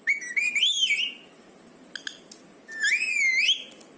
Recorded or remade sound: recorded